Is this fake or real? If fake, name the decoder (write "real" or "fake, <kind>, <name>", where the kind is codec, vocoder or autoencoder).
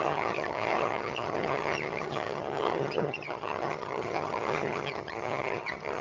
fake, vocoder, HiFi-GAN